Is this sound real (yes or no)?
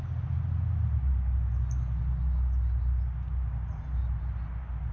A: yes